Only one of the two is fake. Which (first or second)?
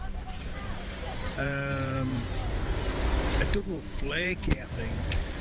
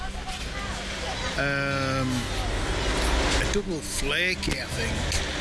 first